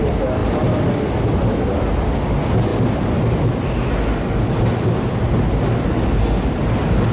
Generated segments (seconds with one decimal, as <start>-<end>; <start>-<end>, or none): none